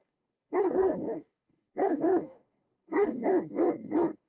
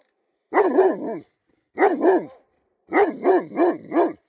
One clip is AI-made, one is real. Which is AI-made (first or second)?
first